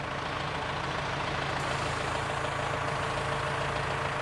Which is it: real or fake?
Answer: real